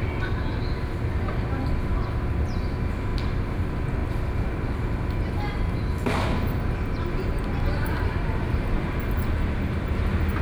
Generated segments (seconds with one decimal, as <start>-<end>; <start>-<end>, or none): none